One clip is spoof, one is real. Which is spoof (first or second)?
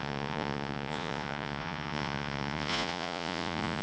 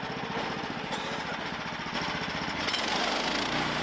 first